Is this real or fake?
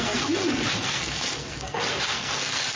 fake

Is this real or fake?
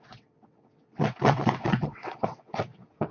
fake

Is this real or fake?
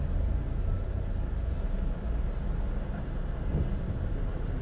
real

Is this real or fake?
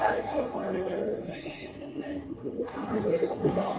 fake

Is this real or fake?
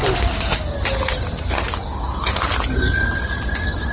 real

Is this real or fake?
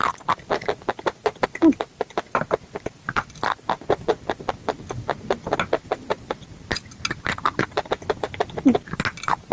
real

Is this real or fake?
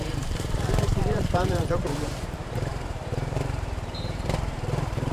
fake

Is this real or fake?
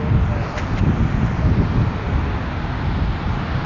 real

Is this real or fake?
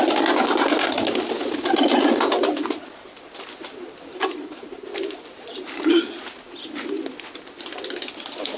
real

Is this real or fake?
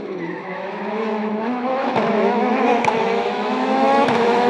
fake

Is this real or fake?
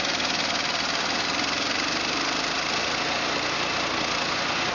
real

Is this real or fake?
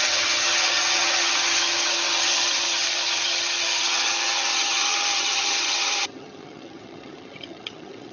fake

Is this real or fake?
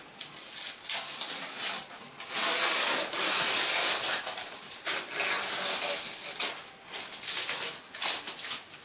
real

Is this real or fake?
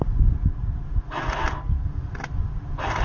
real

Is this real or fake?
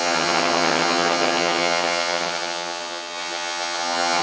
fake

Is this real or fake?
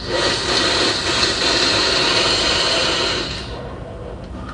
real